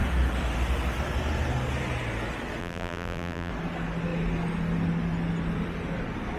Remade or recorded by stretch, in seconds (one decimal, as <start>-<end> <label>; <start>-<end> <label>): 0.0-2.6 recorded; 2.6-3.5 remade; 3.5-6.4 recorded